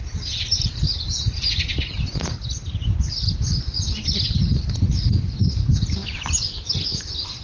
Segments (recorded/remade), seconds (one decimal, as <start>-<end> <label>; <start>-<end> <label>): 0.0-0.5 recorded; 0.5-1.1 remade; 1.1-7.4 recorded